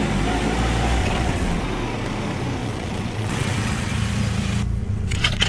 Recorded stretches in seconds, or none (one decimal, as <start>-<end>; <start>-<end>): 0.0-1.0; 1.6-2.6; 3.9-4.8